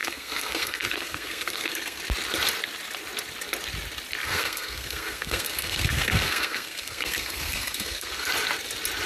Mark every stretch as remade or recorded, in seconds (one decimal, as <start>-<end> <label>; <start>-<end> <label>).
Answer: 0.0-2.0 remade; 2.0-4.2 recorded; 4.2-8.3 remade; 8.3-9.1 recorded